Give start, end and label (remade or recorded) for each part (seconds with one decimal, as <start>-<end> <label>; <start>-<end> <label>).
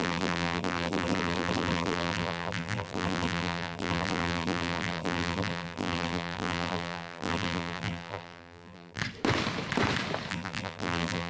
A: 0.0-9.0 remade; 9.0-10.3 recorded; 10.3-11.3 remade